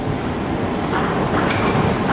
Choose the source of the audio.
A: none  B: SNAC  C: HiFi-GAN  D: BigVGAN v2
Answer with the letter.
D